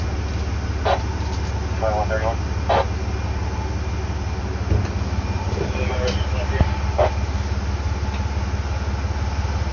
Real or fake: real